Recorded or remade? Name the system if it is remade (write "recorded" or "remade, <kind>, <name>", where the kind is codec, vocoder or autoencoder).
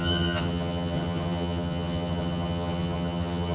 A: remade, vocoder, HiFi-GAN